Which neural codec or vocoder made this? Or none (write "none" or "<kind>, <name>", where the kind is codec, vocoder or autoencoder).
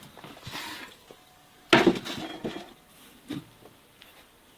none